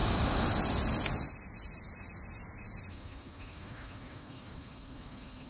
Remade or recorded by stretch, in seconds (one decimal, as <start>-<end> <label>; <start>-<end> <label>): 0.0-2.9 recorded; 2.9-5.5 remade